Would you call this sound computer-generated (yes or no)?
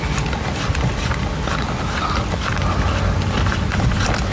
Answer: no